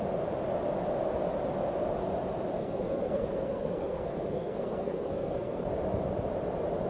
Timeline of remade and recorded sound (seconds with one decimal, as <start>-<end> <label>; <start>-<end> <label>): 0.0-2.6 recorded; 2.6-5.6 remade; 5.6-6.9 recorded